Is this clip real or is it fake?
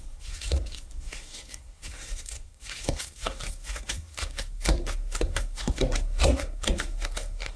fake